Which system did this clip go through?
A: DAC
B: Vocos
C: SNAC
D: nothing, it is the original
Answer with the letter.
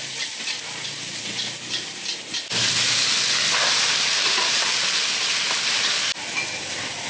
D